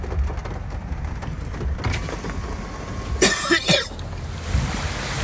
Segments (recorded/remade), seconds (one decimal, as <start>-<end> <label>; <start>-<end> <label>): 0.0-5.2 recorded